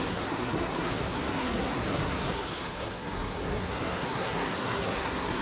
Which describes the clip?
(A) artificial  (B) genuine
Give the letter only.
A